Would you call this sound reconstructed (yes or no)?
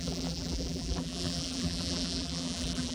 yes